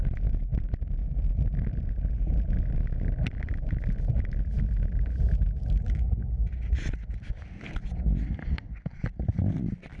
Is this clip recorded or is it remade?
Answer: recorded